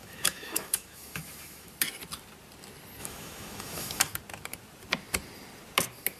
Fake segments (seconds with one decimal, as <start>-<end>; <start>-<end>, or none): 0.0-1.7; 3.0-4.0